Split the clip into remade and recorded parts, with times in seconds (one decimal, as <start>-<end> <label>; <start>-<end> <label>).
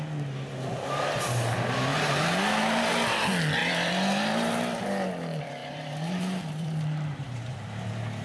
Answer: 0.0-1.9 recorded; 1.9-3.2 remade; 3.2-3.6 recorded; 3.6-5.1 remade; 5.1-5.6 recorded; 5.6-7.5 remade; 7.5-8.2 recorded